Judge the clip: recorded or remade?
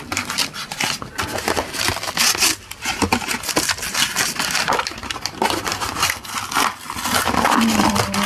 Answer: remade